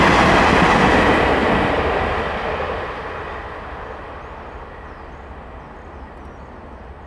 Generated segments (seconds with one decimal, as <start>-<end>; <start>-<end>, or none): none